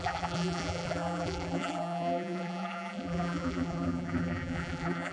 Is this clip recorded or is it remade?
remade